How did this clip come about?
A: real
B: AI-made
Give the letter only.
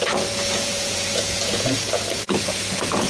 B